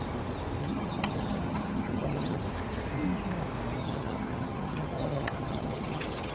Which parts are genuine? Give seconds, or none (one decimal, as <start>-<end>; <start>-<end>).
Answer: 0.0-0.6; 2.4-3.8